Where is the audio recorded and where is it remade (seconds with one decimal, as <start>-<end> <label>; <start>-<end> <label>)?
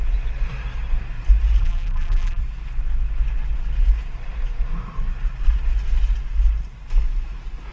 0.0-1.6 recorded; 1.6-2.4 remade; 2.4-7.7 recorded